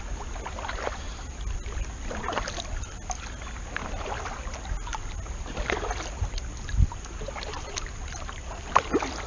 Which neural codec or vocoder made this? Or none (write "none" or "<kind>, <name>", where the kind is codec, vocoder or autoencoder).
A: none